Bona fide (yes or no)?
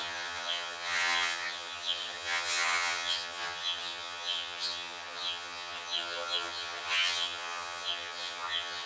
no